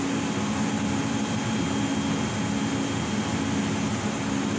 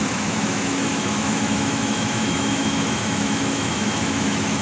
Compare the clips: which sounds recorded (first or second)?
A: first